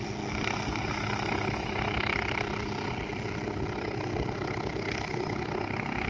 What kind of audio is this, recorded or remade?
recorded